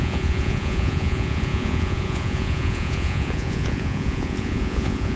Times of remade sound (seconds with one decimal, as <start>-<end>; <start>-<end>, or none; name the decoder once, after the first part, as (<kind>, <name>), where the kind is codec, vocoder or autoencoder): 0.0-5.2 (vocoder, Vocos)